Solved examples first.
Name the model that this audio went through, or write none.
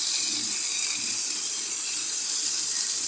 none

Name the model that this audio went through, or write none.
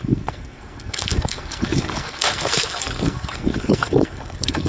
codec, SNAC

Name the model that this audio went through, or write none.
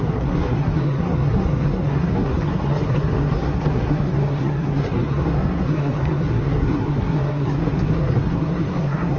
codec, SNAC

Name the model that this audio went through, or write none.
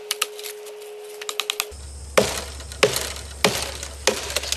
none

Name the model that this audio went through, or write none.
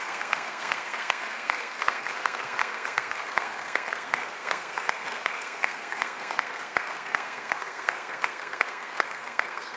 codec, SNAC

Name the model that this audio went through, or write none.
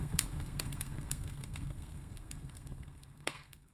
codec, SNAC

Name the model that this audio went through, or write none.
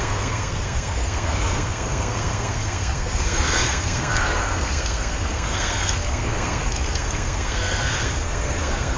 codec, SNAC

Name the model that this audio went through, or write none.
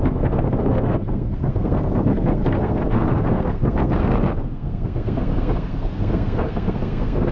codec, SNAC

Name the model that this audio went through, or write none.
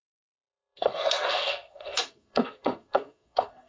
codec, SNAC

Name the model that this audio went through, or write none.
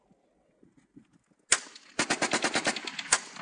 none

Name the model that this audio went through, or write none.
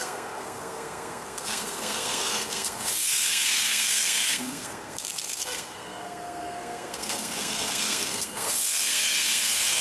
codec, SNAC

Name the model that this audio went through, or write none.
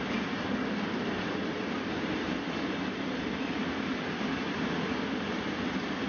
none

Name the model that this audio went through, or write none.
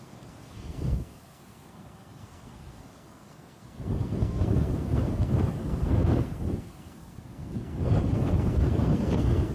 codec, SNAC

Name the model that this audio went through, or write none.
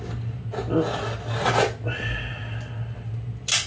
none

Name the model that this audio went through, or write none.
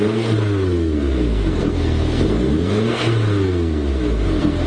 codec, SNAC